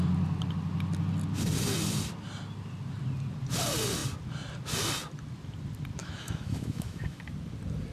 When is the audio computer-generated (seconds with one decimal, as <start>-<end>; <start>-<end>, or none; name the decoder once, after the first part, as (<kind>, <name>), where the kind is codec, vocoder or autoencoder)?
6.0-7.2 (autoencoder, DAC-VAE)